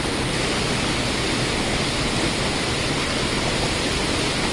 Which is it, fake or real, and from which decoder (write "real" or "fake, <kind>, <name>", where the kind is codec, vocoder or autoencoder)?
fake, vocoder, BigVGAN v2